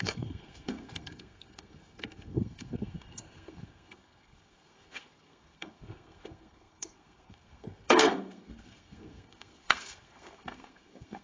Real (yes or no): no